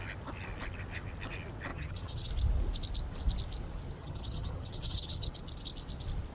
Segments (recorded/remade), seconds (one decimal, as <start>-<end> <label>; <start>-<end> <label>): 0.0-1.7 recorded; 1.7-2.3 remade; 2.3-4.0 recorded; 4.0-5.3 remade; 5.3-6.3 recorded